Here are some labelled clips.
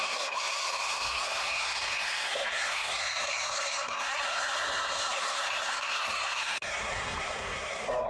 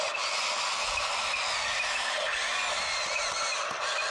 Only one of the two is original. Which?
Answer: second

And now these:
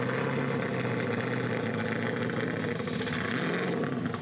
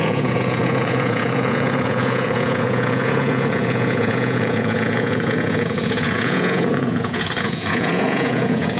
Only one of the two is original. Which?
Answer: first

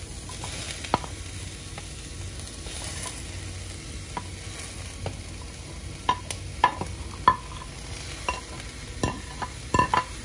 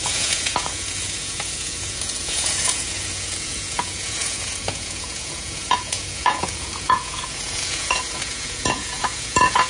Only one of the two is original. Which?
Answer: first